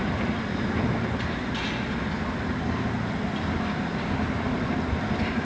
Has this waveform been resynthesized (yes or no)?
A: no